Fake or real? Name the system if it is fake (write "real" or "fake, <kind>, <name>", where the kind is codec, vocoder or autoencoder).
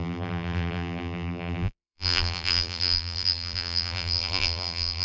fake, vocoder, BigVGAN v2